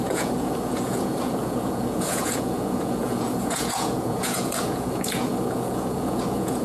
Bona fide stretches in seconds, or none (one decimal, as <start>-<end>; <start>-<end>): none